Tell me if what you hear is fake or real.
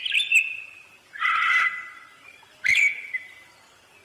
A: real